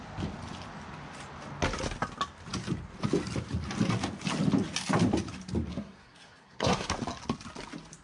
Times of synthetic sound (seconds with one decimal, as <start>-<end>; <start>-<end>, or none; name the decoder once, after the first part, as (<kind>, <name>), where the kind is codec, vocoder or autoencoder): 5.7-6.9 (codec, SNAC)